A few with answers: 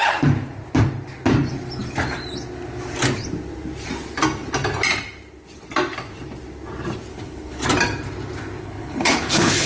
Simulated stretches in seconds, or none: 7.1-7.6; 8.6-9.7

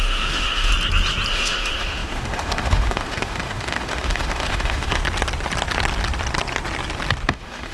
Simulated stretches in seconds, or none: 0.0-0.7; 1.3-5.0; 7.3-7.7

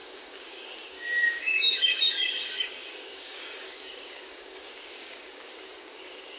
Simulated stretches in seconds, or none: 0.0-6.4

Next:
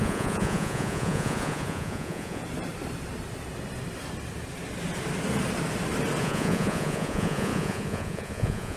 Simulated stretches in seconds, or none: 0.0-2.4; 6.2-8.8

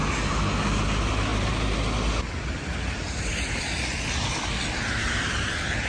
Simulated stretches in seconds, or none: none

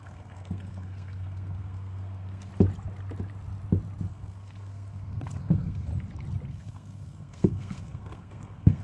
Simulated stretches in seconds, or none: 0.0-2.5; 4.1-5.9; 6.5-8.8

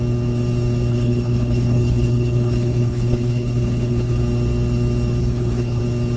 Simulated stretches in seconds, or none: 0.9-4.2; 5.2-5.8